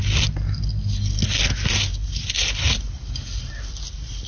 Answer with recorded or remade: recorded